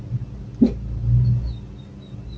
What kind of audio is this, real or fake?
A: real